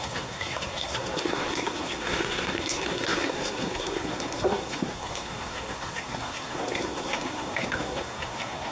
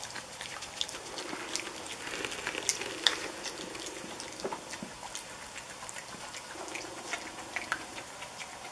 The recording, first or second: second